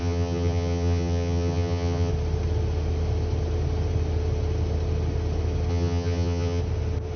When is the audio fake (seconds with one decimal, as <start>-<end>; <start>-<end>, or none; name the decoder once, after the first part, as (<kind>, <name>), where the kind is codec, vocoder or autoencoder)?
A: 0.0-2.1 (vocoder, HiFi-GAN); 5.7-6.6